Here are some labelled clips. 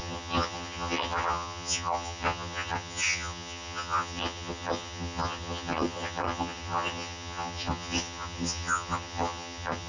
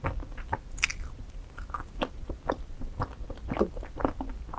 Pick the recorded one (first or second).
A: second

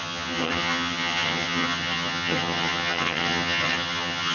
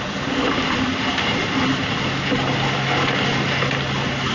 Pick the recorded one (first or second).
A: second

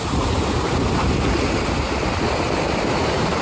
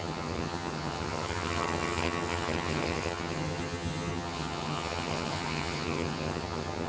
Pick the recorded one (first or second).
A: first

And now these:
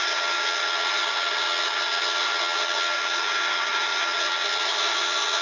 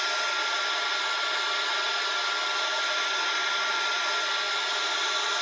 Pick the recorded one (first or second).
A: second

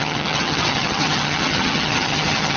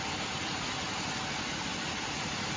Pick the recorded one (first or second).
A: second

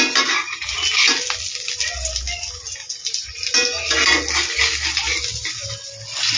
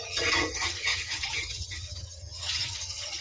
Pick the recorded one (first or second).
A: first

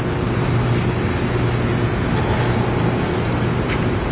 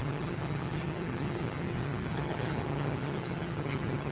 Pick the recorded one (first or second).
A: first